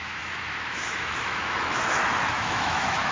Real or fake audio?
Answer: fake